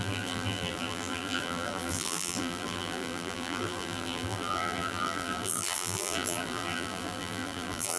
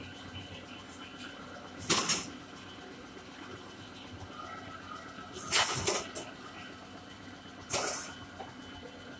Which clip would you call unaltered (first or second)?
second